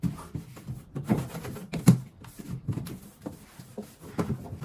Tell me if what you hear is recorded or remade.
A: recorded